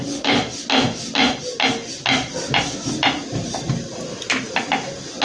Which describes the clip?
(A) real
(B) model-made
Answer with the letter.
A